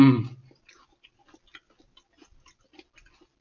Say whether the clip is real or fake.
real